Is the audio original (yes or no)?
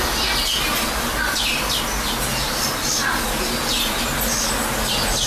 yes